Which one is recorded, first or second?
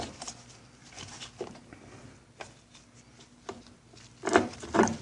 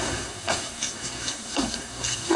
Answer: first